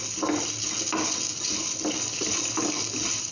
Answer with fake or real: real